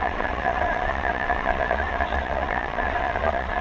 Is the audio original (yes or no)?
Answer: no